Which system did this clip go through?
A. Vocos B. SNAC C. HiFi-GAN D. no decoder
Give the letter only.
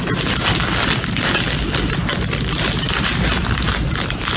D